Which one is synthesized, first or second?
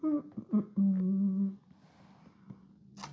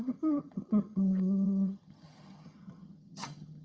second